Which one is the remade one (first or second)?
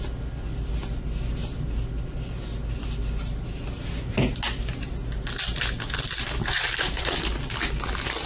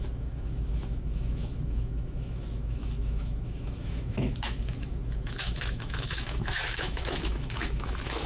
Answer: second